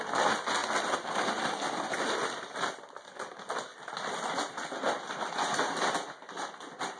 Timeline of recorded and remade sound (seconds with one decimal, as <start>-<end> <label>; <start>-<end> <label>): 0.0-7.0 recorded